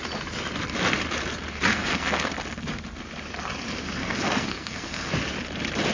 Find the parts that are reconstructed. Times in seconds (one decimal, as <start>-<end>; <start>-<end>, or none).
1.7-2.3; 4.0-5.1